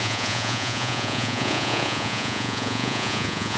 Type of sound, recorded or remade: remade